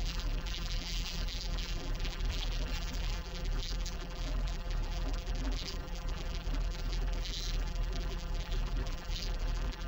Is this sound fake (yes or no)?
yes